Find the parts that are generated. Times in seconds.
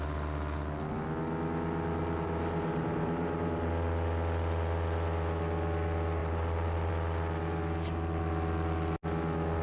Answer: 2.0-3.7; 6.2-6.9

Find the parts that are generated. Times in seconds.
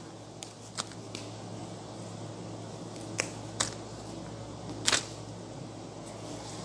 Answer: none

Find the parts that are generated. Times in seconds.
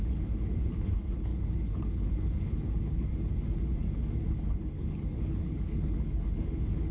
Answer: 0.0-3.1; 4.4-6.9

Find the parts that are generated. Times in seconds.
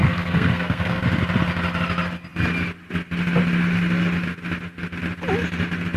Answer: 0.0-1.0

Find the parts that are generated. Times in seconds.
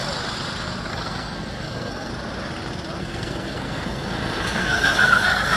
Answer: 0.9-2.1; 3.0-5.6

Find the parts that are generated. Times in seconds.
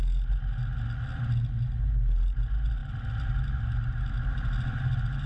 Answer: none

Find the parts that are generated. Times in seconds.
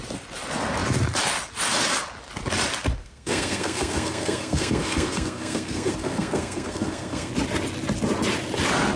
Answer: 3.0-7.3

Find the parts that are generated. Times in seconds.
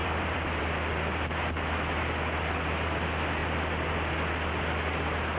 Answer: 0.0-0.6